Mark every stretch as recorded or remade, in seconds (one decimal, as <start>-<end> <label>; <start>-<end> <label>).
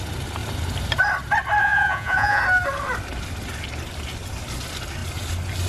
0.0-1.6 recorded; 1.6-2.4 remade; 2.4-5.7 recorded